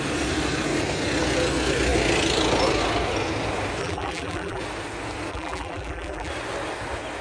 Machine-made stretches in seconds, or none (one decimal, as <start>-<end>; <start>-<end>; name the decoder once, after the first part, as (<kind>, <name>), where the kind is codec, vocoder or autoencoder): 3.8-4.6 (vocoder, BigVGAN v2); 5.3-6.3